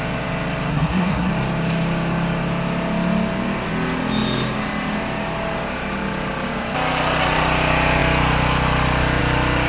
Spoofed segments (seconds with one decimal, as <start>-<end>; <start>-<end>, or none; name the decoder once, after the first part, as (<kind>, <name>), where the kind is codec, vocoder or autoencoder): 0.7-1.3 (codec, SNAC)